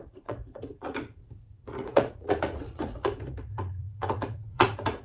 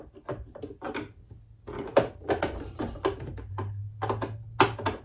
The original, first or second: second